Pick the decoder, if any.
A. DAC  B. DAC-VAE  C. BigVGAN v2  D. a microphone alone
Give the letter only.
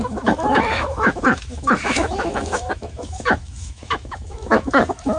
B